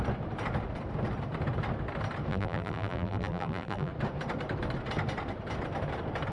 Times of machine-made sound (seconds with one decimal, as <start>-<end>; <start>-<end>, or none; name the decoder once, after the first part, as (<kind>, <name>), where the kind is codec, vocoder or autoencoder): 2.3-3.9 (vocoder, BigVGAN v2)